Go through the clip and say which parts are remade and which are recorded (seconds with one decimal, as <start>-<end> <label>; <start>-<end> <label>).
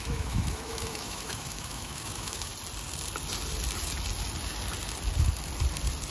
0.0-2.5 remade; 2.5-6.1 recorded